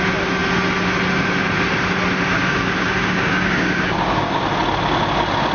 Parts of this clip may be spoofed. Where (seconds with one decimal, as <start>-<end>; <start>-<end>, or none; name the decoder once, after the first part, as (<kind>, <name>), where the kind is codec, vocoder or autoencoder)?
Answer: 2.3-4.4 (codec, DAC)